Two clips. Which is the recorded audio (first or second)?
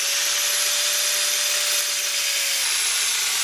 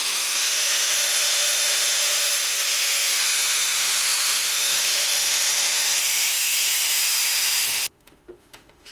first